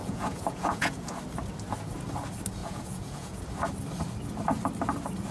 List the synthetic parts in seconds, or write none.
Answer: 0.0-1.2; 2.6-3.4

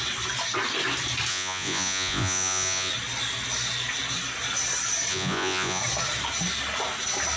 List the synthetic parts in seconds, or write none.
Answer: 1.3-2.9; 5.1-5.8

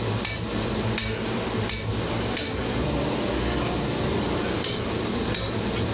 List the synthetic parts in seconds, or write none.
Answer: none

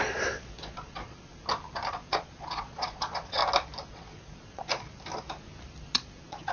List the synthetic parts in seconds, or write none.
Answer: 0.0-1.3; 1.9-3.4; 3.9-4.7; 5.8-6.5